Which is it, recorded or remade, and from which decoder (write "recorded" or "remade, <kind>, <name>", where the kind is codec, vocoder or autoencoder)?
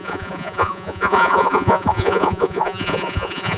remade, vocoder, Vocos